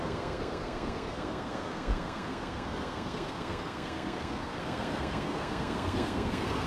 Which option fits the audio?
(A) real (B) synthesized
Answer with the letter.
B